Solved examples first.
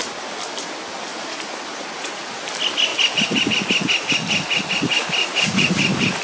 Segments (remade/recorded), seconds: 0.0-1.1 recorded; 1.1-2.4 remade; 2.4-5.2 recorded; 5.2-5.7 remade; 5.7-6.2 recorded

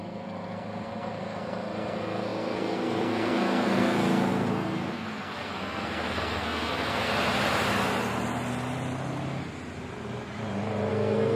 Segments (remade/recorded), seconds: 0.0-7.1 remade; 7.1-10.9 recorded; 10.9-11.4 remade